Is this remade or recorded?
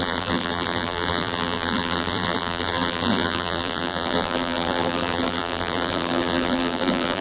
remade